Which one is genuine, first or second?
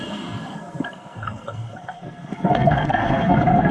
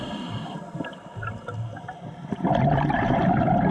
second